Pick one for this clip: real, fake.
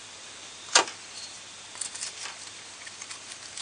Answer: fake